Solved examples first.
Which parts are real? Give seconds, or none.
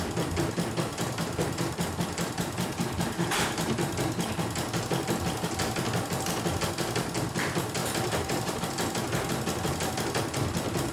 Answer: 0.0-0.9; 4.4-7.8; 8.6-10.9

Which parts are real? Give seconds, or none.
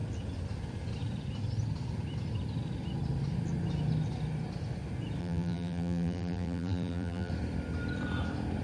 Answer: 0.0-5.2; 7.3-8.6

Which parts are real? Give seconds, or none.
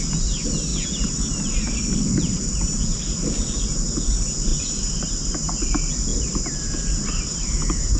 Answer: 0.0-8.0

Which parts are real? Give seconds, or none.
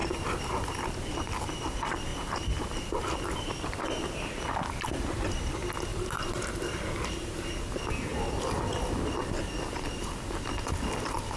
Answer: 0.5-2.1; 3.0-5.9; 7.6-11.4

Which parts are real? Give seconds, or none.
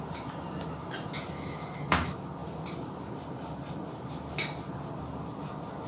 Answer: 0.0-5.9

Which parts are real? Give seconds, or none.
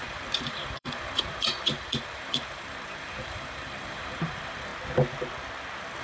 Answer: 4.7-6.0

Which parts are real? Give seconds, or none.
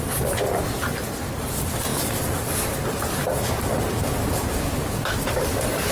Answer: 0.0-1.9; 3.5-5.9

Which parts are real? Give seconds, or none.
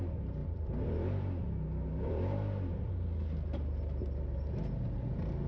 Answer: 0.0-0.4; 2.9-5.5